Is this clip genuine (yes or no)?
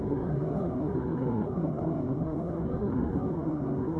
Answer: no